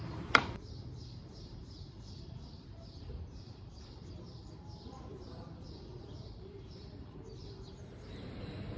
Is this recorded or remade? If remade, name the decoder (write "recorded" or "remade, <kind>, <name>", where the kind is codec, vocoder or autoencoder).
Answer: remade, vocoder, BigVGAN v2